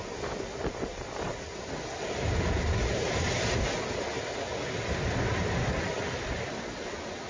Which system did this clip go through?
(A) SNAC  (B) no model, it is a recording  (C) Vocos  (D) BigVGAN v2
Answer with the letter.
B